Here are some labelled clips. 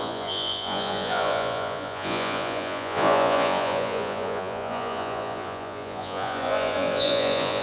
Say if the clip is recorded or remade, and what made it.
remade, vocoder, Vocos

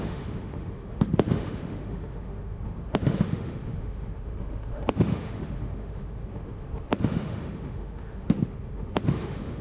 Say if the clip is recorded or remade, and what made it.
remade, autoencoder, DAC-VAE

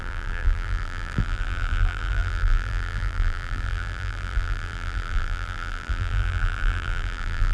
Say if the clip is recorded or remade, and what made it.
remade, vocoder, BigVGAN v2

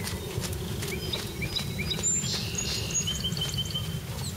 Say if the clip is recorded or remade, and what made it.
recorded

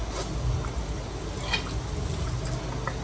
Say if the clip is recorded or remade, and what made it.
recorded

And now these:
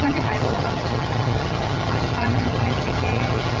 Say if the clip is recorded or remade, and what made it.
remade, vocoder, HiFi-GAN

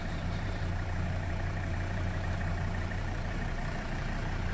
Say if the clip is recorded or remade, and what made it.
remade, vocoder, BigVGAN v2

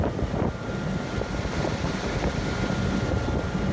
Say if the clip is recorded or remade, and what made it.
recorded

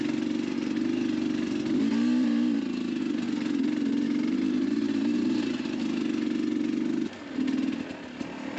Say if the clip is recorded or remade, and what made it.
recorded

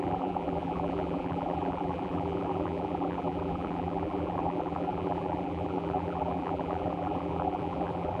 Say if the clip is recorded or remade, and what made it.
remade, vocoder, BigVGAN v2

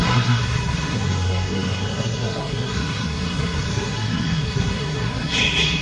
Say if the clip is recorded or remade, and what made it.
remade, codec, SNAC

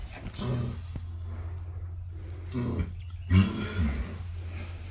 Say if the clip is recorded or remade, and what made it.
recorded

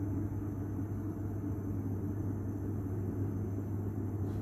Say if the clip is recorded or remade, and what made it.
recorded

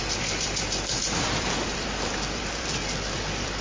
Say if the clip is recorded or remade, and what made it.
remade, vocoder, BigVGAN v2